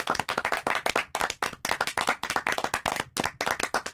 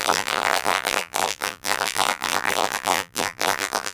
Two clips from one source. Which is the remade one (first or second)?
second